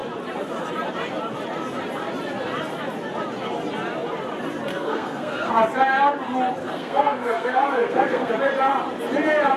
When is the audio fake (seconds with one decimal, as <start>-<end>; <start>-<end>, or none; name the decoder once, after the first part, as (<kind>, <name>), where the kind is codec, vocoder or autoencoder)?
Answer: 4.7-5.5 (codec, SNAC); 6.6-8.3